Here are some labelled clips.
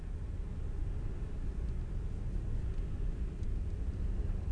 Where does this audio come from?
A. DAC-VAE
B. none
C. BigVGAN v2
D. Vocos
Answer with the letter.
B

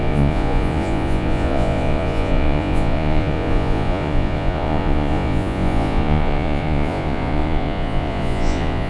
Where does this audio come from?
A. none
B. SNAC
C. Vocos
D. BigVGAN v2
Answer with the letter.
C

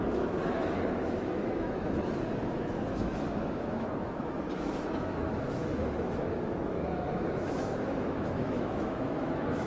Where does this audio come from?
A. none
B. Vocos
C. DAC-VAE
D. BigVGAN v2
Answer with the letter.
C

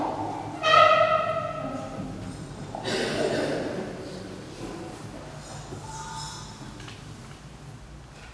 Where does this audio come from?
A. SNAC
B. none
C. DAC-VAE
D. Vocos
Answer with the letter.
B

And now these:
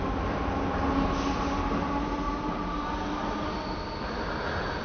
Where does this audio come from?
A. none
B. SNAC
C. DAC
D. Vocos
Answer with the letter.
A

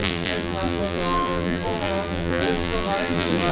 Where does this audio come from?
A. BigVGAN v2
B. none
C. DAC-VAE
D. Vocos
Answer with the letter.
A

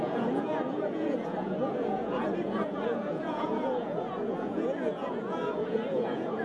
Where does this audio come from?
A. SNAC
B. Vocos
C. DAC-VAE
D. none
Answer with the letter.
B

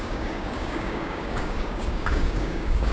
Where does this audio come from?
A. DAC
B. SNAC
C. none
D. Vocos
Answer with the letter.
A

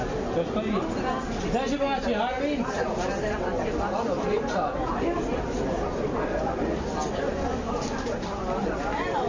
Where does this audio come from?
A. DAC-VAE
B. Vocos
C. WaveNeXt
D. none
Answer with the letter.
D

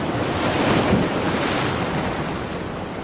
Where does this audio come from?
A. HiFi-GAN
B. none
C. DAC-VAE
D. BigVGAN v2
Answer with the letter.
B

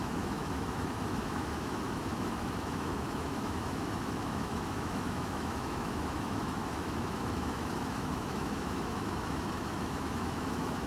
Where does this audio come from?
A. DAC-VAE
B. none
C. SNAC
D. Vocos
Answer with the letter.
A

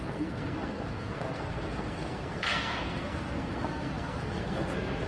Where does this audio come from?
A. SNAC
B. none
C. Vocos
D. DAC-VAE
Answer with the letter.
A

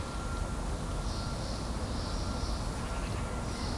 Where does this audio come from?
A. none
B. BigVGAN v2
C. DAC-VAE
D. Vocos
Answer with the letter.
A